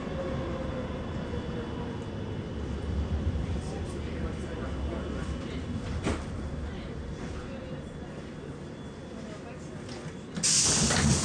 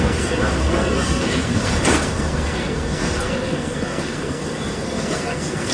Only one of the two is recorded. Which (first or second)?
first